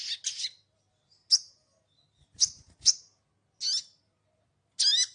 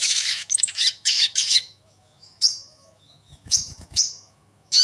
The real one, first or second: first